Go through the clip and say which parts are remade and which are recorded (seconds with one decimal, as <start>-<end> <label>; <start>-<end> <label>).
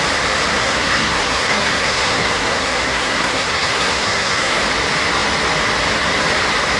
0.0-0.5 recorded; 0.5-4.6 remade; 4.6-6.8 recorded